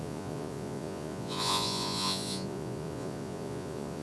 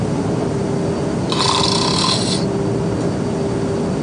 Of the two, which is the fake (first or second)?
first